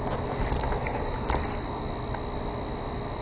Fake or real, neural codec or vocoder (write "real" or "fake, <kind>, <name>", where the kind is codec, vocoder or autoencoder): real